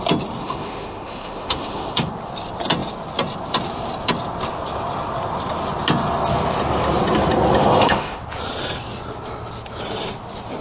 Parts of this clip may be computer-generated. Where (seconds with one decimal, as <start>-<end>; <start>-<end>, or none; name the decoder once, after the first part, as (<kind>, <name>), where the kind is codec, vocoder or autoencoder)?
0.4-2.1 (autoencoder, DAC-VAE); 7.6-8.2